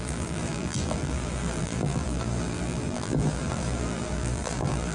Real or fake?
fake